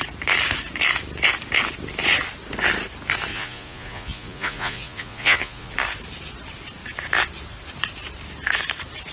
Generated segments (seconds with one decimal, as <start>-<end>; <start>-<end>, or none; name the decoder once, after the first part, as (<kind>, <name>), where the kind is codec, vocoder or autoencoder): 3.3-5.7 (vocoder, Vocos)